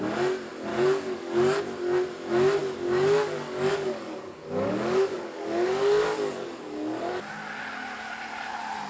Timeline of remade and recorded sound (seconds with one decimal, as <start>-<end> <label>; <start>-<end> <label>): 0.0-0.7 recorded; 0.7-1.6 remade; 1.6-2.6 recorded; 2.6-7.1 remade; 7.1-8.9 recorded